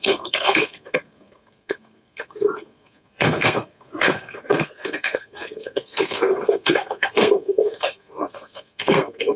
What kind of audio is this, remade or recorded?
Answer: remade